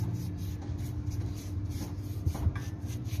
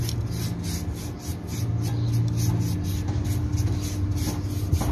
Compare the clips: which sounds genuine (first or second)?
second